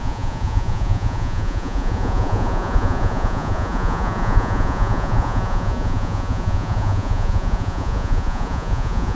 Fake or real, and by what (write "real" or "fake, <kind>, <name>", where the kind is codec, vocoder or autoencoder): fake, vocoder, Vocos